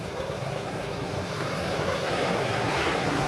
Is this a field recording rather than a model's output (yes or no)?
no